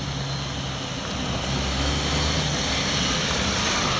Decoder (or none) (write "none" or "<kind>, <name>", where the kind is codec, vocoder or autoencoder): none